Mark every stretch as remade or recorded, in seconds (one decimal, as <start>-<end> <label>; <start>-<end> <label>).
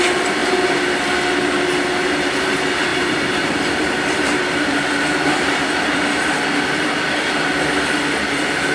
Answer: 0.0-2.9 recorded; 2.9-4.9 remade; 4.9-8.7 recorded